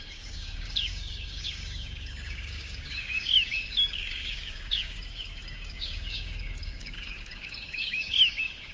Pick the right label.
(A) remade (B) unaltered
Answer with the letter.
A